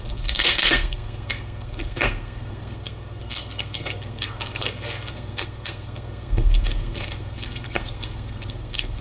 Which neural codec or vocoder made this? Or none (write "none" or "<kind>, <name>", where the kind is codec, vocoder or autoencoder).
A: codec, SNAC